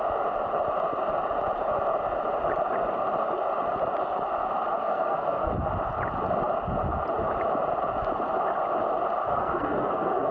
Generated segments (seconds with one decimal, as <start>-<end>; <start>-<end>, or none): 4.8-5.5; 9.3-10.3